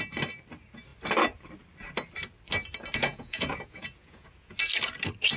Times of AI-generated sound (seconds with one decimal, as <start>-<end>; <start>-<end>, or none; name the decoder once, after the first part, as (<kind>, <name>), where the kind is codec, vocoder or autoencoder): 3.0-4.6 (vocoder, Vocos)